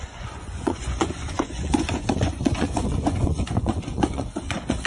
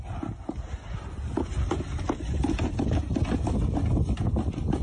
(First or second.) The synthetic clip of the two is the first